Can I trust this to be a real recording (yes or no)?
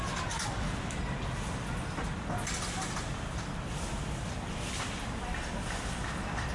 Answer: yes